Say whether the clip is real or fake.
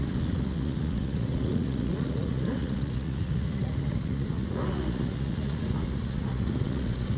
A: fake